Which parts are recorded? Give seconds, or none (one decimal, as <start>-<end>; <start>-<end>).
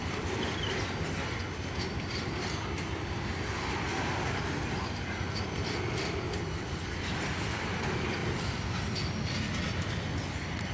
0.0-10.7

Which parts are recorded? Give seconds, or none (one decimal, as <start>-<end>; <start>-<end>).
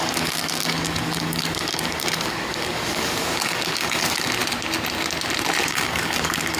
4.4-5.6